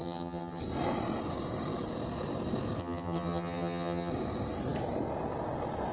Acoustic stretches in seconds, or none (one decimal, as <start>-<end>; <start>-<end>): 0.6-2.8; 4.1-5.9